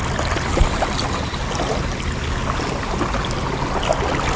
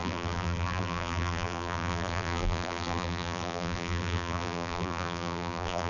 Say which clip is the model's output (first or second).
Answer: second